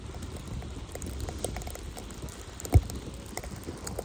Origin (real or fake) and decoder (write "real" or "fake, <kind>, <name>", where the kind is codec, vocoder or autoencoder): real